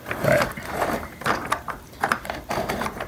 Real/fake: fake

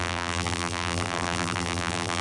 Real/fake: fake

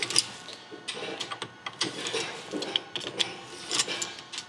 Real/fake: real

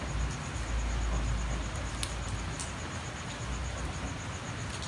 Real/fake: real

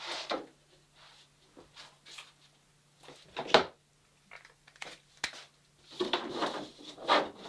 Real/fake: real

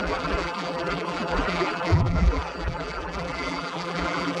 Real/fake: fake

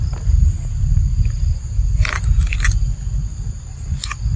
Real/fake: real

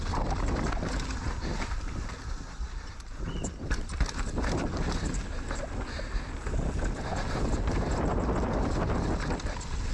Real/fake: real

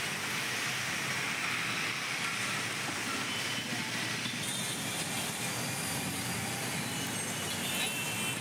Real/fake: real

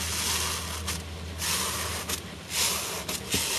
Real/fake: real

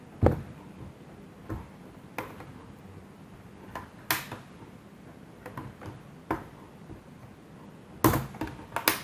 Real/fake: real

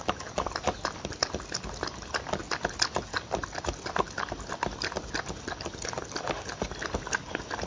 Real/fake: real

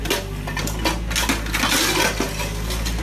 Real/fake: real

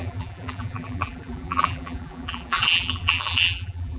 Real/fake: fake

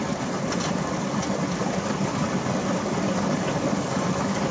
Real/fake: real